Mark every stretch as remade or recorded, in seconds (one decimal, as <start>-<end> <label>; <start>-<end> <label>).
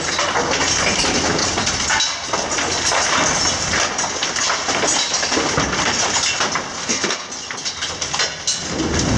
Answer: 0.0-6.8 recorded; 6.8-7.3 remade; 7.3-9.2 recorded